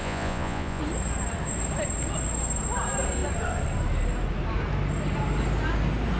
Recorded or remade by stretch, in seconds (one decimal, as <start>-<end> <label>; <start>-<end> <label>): 0.0-0.8 remade; 0.8-6.2 recorded